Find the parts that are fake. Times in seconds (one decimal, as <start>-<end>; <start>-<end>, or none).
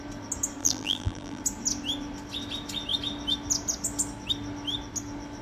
0.6-1.4